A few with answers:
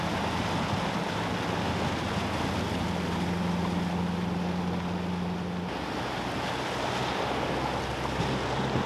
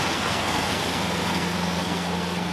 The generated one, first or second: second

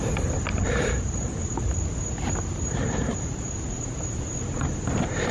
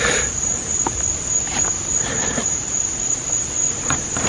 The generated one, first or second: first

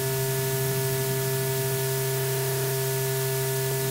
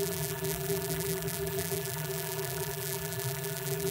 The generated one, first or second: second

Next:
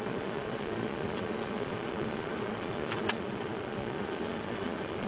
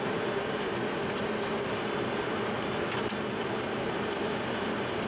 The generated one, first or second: first